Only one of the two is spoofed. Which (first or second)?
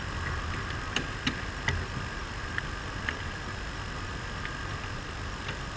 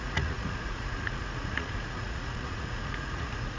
second